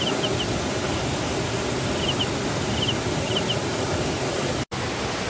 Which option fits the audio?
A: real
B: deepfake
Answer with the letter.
A